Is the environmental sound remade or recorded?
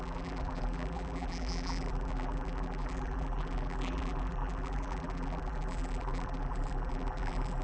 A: remade